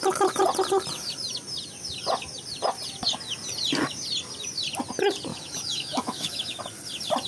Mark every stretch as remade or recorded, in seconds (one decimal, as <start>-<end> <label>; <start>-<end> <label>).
0.0-5.3 recorded; 5.3-6.6 remade; 6.6-7.3 recorded